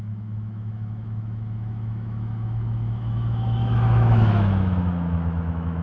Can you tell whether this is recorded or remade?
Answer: remade